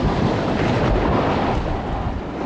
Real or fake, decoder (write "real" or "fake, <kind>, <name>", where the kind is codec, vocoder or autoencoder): real